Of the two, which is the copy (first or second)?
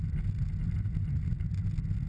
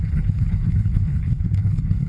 second